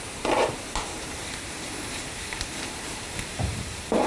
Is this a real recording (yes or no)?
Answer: no